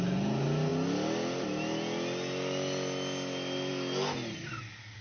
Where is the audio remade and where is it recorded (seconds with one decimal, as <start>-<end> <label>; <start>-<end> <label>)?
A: 0.0-5.0 recorded